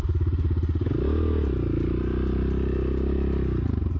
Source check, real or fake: real